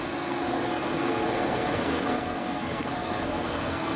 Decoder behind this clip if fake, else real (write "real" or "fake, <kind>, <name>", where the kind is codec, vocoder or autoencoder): fake, codec, SNAC